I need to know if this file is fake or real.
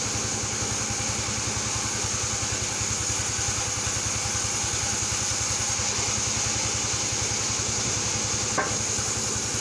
real